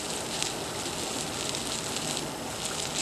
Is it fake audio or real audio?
real